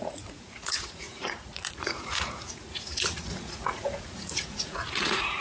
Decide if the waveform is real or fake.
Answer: fake